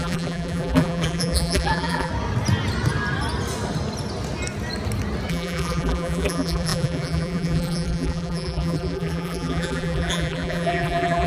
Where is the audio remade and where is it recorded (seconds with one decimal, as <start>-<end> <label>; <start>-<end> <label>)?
0.0-2.1 remade; 2.1-5.3 recorded; 5.3-11.3 remade